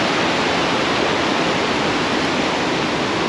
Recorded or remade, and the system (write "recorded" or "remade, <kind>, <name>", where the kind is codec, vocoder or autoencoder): recorded